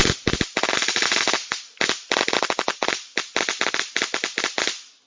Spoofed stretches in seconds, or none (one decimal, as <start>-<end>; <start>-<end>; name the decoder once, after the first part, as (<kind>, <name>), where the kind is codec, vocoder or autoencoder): none